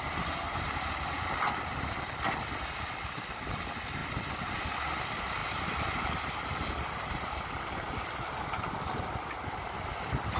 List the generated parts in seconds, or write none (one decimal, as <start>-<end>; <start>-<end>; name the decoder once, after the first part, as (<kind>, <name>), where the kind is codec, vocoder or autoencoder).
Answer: none